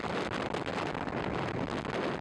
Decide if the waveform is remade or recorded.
recorded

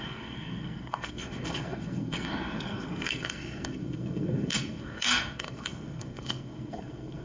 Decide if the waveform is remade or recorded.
remade